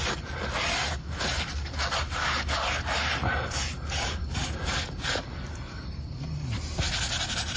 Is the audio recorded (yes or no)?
yes